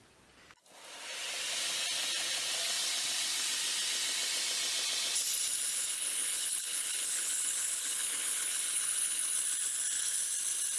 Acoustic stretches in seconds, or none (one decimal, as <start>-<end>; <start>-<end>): 0.0-5.7; 9.2-10.8